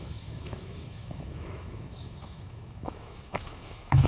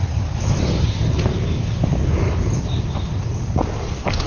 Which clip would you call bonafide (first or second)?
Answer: second